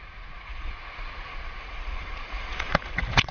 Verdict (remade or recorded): remade